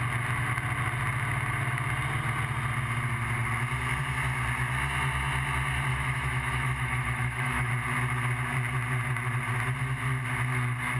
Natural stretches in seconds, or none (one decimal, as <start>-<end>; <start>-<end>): 0.0-5.9; 7.7-11.0

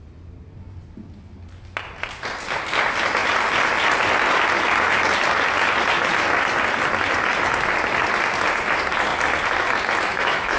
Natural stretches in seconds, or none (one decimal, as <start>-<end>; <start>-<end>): 0.0-10.1

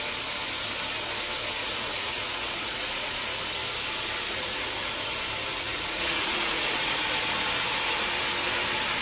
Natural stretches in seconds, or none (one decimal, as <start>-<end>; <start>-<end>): 0.0-1.6; 3.4-4.3; 4.9-5.5; 7.0-9.0

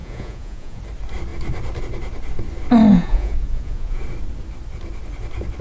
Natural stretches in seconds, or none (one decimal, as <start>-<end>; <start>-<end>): 0.8-2.9; 4.0-5.6

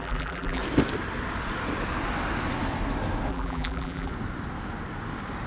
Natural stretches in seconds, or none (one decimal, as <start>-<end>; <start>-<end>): 0.6-3.3; 4.1-5.5